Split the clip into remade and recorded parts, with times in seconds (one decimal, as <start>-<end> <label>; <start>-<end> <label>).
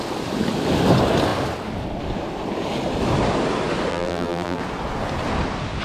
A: 0.0-3.9 recorded; 3.9-4.6 remade; 4.6-5.8 recorded